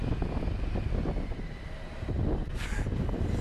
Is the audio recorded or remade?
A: recorded